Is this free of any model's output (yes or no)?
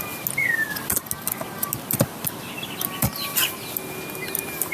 yes